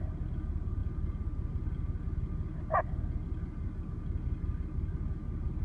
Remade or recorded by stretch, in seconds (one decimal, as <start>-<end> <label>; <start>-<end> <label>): 0.0-5.6 recorded

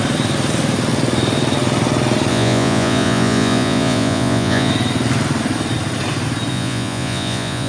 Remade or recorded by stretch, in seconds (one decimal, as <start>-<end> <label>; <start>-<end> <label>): 0.0-2.3 recorded; 2.3-4.7 remade; 4.7-6.5 recorded; 6.5-7.7 remade

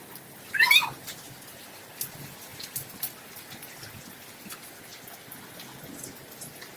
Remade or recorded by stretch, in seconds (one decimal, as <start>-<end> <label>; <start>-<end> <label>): 0.0-6.8 recorded

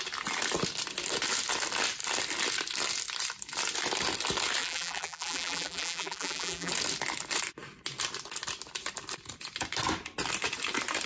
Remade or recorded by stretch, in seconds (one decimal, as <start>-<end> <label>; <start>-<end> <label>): 0.0-4.6 recorded; 4.6-6.7 remade; 6.7-11.1 recorded

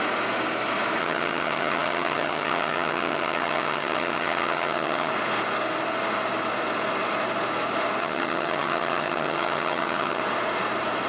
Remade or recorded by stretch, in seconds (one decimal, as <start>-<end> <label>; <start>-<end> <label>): 0.0-1.0 recorded; 1.0-5.1 remade; 5.1-8.0 recorded; 8.0-10.2 remade; 10.2-11.1 recorded

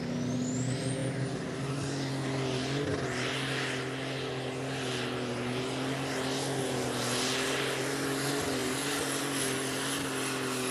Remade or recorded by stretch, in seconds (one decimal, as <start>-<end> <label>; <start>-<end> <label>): 0.0-10.7 recorded

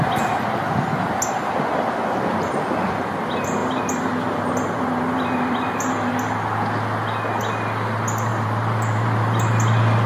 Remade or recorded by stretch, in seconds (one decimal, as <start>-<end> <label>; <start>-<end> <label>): 0.0-3.6 recorded; 3.6-6.1 remade; 6.1-8.3 recorded; 8.3-9.5 remade; 9.5-10.1 recorded

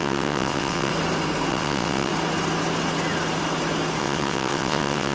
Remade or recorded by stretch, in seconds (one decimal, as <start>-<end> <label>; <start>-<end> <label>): 0.0-0.9 remade; 0.9-1.5 recorded; 1.5-2.1 remade; 2.1-4.0 recorded; 4.0-5.1 remade